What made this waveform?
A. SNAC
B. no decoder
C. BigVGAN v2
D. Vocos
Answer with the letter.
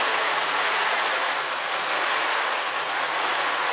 D